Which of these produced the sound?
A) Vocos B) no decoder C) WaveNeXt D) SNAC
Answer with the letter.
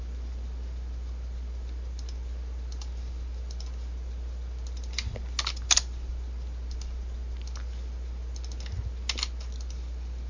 B